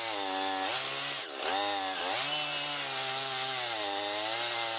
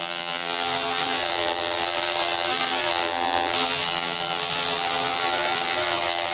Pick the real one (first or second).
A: first